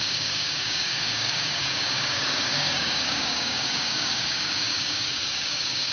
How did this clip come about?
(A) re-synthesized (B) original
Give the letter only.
A